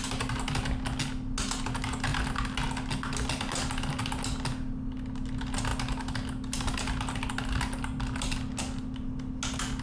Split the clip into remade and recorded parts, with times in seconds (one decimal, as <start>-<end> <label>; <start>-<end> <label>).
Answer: 0.0-9.8 recorded